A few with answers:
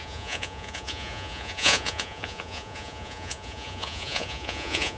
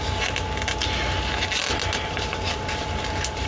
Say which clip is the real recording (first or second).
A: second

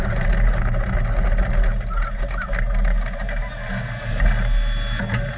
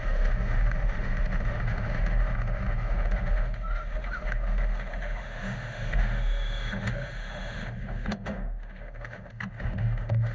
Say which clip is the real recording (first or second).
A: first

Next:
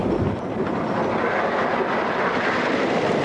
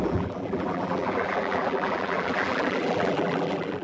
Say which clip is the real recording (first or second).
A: first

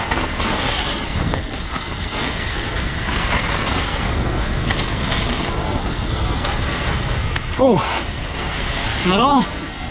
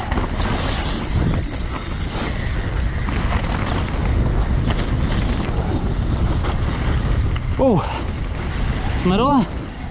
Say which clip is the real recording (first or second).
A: second